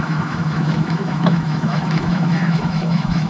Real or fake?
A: fake